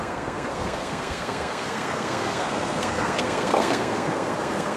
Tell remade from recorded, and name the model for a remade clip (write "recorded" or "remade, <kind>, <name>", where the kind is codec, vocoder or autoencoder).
remade, codec, SNAC